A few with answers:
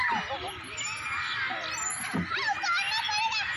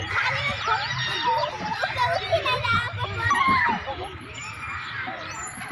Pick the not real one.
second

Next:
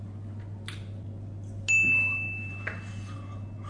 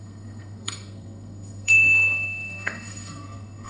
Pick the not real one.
second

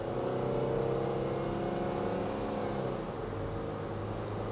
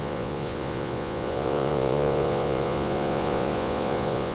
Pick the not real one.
second